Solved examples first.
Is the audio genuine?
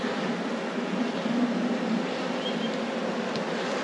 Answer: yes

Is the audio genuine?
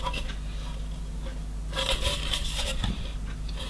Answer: yes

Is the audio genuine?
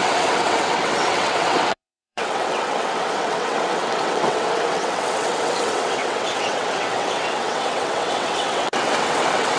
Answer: no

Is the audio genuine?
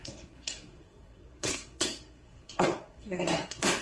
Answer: no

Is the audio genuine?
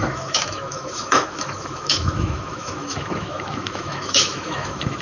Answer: no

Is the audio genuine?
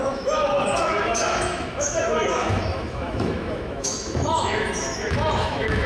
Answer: no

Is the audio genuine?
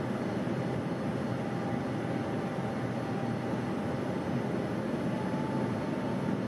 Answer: yes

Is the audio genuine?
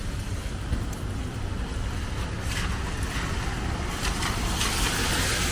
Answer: yes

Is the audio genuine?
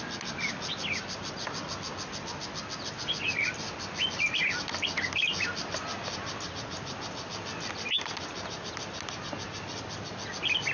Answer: yes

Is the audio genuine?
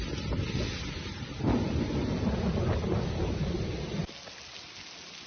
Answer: yes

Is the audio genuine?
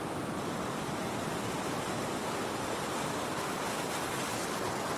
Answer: no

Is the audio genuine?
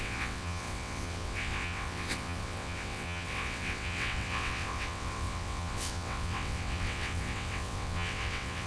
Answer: no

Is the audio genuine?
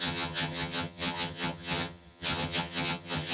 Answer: no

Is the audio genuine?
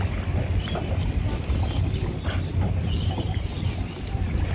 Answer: yes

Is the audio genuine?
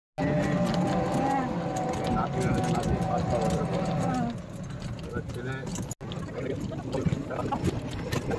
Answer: yes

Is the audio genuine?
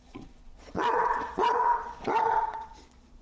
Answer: no